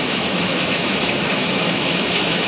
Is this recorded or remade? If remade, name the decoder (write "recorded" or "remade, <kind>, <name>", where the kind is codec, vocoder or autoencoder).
remade, autoencoder, DAC-VAE